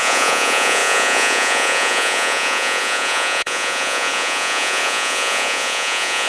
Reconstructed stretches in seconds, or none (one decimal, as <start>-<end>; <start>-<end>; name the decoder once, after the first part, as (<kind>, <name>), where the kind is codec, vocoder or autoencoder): 0.0-6.3 (vocoder, Vocos)